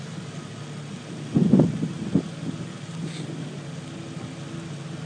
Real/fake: real